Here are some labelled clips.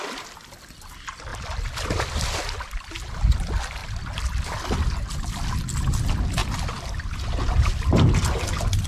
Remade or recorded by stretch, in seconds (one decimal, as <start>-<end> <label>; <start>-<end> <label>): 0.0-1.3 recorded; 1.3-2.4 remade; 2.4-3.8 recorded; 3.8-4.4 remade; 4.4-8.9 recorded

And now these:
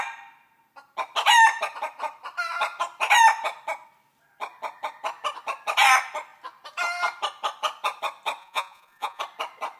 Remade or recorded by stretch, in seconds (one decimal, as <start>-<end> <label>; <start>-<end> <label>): 0.0-8.4 recorded; 8.4-9.2 remade; 9.2-9.8 recorded

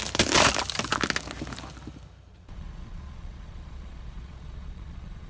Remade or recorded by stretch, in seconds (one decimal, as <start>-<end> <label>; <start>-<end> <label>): 0.0-2.3 recorded; 2.3-5.3 remade

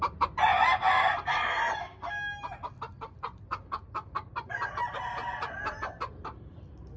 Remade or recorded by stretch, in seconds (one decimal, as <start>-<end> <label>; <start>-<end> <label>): 0.0-7.0 recorded

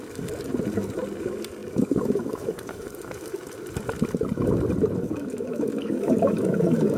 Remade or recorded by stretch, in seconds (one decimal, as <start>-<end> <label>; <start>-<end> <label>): 0.0-0.5 remade; 0.5-1.2 recorded; 1.2-3.4 remade; 3.4-5.0 recorded; 5.0-7.0 remade